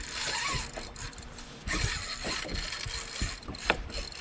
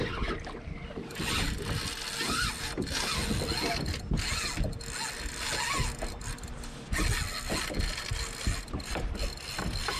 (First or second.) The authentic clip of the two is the second